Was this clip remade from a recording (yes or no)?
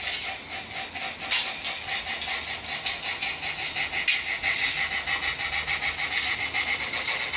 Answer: no